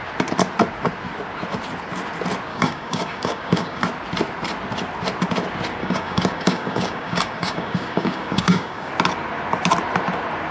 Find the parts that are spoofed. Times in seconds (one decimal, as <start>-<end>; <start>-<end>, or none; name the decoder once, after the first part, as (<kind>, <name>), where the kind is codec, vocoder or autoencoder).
2.5-3.8 (codec, DAC); 5.8-8.9